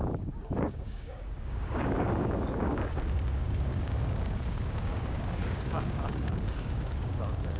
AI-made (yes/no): yes